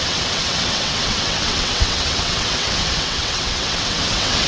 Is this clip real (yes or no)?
no